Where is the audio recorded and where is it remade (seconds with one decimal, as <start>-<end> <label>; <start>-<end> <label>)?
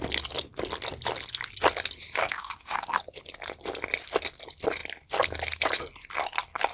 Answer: 0.0-2.2 recorded; 2.2-3.0 remade; 3.0-6.7 recorded